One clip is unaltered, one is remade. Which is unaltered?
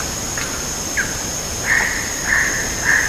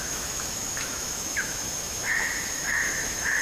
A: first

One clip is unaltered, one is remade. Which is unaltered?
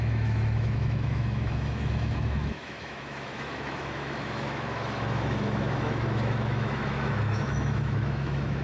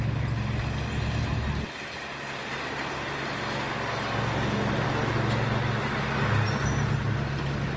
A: second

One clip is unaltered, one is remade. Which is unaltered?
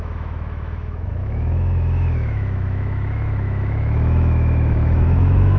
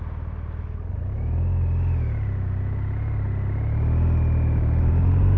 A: second